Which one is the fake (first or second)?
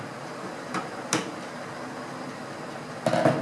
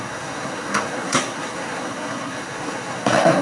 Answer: second